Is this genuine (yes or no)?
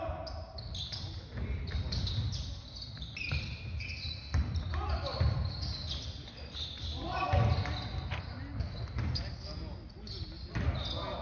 yes